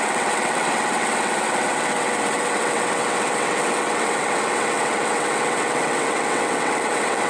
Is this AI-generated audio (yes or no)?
yes